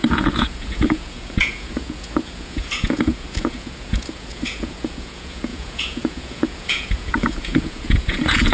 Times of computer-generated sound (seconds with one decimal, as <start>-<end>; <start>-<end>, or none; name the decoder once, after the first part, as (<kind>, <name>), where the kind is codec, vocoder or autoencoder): 0.0-8.5 (vocoder, Vocos)